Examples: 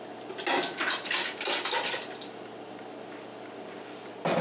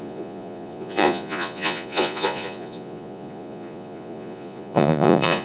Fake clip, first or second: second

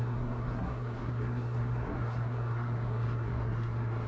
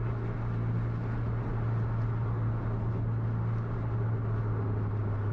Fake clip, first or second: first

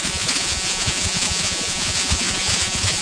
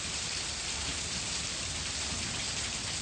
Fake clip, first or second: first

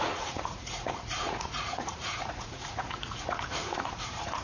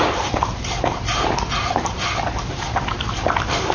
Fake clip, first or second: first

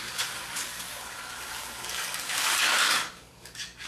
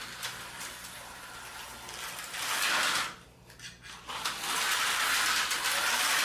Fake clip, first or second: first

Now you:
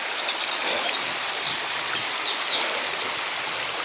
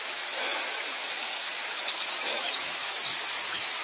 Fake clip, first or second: second